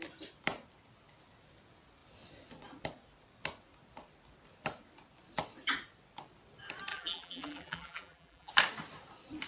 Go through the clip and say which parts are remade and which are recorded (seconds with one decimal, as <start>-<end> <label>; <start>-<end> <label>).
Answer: 0.0-6.9 recorded; 6.9-8.5 remade; 8.5-9.5 recorded

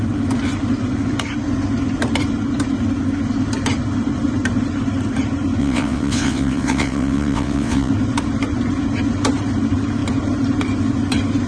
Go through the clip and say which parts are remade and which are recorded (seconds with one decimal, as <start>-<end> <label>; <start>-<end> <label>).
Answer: 0.0-5.6 recorded; 5.6-7.9 remade; 7.9-11.5 recorded

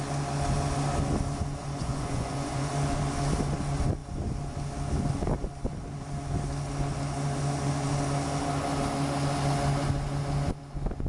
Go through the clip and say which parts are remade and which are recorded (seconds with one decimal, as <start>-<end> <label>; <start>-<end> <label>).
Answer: 0.0-1.6 recorded; 1.6-2.7 remade; 2.7-11.1 recorded

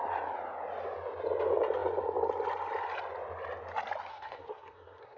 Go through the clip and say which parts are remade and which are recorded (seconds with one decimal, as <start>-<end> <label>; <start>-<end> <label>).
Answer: 0.0-4.1 recorded; 4.1-5.2 remade

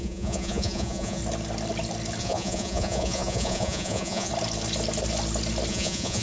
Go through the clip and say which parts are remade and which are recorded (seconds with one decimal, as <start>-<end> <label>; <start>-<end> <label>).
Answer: 0.0-1.2 remade; 1.2-2.2 recorded; 2.2-4.3 remade; 4.3-5.7 recorded; 5.7-6.2 remade

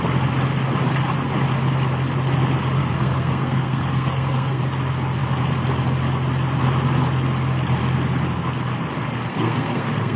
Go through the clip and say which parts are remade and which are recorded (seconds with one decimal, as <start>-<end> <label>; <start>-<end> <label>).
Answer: 0.0-2.8 recorded; 2.8-4.6 remade; 4.6-9.3 recorded; 9.3-10.2 remade

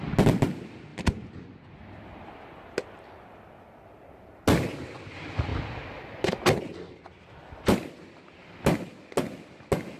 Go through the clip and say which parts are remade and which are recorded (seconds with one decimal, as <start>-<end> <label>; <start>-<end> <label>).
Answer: 0.0-10.0 recorded

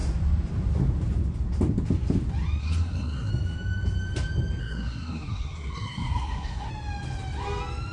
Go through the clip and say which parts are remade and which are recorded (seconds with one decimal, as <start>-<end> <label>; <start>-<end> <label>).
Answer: 0.0-2.6 recorded; 2.6-3.3 remade; 3.3-4.6 recorded; 4.6-6.7 remade; 6.7-7.9 recorded